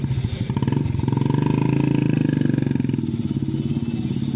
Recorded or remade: recorded